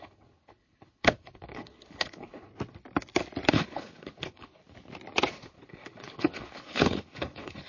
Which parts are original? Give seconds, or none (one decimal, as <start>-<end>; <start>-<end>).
2.5-3.5; 4.6-5.3